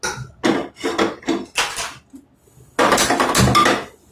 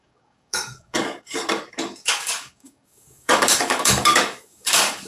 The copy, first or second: second